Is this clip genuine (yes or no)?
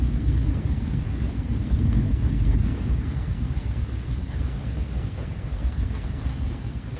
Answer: no